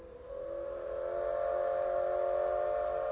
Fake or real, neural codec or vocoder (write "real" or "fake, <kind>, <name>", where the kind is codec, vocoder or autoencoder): real